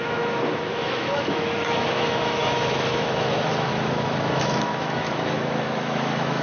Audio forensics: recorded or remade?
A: remade